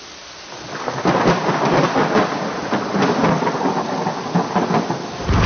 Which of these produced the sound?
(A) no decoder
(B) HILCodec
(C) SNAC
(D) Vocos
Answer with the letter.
A